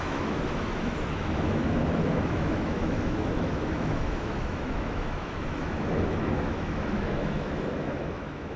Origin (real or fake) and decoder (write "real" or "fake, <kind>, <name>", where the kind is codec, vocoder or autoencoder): fake, autoencoder, DAC-VAE